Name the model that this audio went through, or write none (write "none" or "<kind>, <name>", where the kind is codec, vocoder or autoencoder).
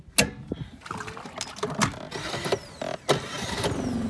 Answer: none